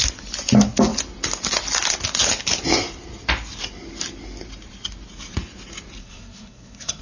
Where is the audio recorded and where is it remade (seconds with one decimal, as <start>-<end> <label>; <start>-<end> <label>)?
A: 0.0-6.0 recorded; 6.0-7.0 remade

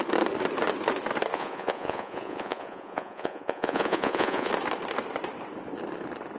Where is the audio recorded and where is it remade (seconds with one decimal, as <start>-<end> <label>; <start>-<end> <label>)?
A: 0.0-1.3 recorded; 1.3-4.5 remade; 4.5-6.4 recorded

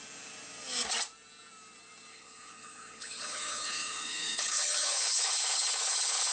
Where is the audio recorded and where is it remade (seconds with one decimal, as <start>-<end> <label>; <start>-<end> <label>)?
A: 0.0-2.1 recorded; 2.1-6.3 remade